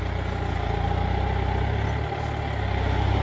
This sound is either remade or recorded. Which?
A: recorded